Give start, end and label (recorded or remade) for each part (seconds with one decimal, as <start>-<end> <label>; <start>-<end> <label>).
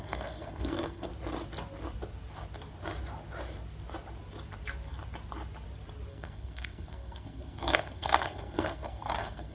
0.0-1.1 remade; 1.1-6.1 recorded; 6.1-9.5 remade